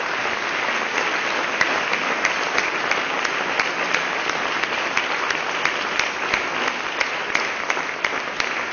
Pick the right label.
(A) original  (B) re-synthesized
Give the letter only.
A